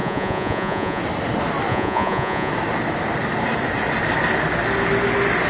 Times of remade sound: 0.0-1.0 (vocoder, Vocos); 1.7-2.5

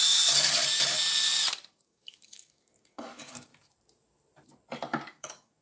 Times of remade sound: 0.0-0.6 (codec, DAC); 1.7-3.5; 5.1-5.6

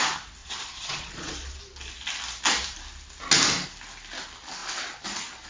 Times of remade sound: 0.4-1.6 (vocoder, Vocos)

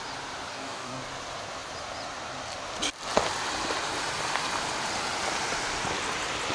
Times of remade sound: 0.5-1.0 (codec, DAC)

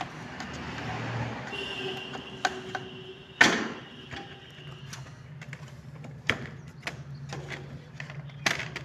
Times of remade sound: none

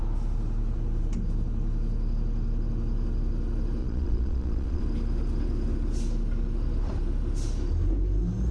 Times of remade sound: 3.8-4.8 (vocoder, Vocos)